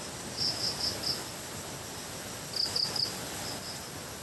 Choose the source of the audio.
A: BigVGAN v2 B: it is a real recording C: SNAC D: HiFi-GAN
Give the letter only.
B